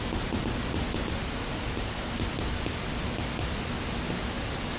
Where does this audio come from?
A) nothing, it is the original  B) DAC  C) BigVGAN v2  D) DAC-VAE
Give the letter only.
A